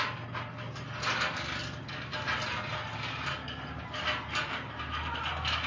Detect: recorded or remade recorded